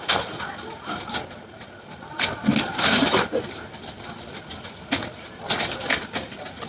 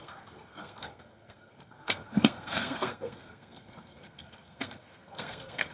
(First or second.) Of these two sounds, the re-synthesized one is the second